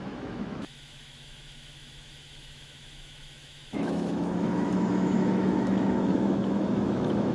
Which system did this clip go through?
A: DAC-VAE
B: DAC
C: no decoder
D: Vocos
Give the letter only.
A